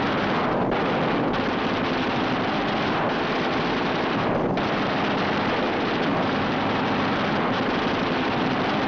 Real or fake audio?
real